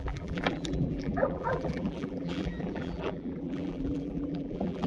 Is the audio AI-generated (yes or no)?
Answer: yes